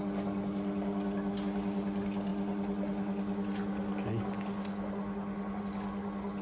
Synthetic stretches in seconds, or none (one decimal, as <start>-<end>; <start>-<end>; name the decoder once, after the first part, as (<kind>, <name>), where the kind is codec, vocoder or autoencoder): none